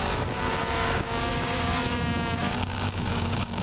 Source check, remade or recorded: remade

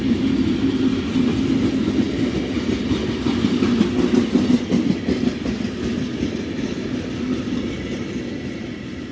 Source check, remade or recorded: recorded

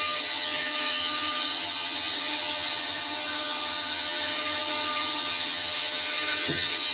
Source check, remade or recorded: remade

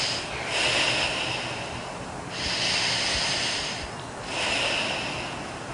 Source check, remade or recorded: recorded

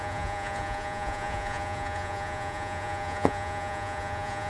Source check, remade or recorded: remade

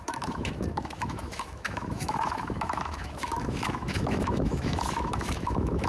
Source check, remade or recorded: remade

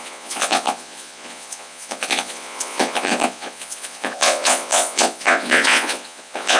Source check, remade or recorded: remade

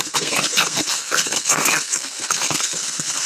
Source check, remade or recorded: remade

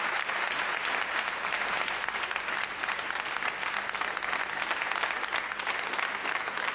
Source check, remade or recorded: recorded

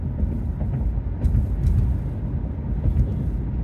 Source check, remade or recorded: recorded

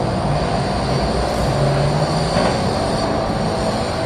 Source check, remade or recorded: recorded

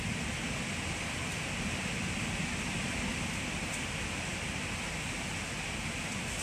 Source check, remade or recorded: recorded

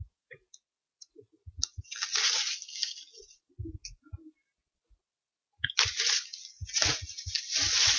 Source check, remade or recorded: recorded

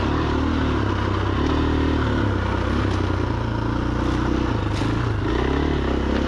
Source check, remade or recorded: recorded